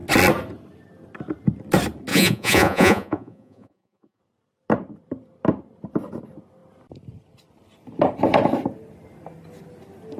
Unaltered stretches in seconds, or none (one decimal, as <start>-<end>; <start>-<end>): 0.0-2.1; 4.2-10.2